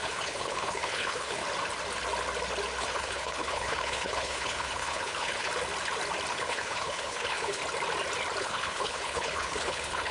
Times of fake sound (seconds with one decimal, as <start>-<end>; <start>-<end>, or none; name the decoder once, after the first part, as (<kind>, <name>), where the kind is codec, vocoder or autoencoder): 0.0-1.4 (codec, HILCodec); 2.8-5.5; 6.3-7.6; 8.4-10.1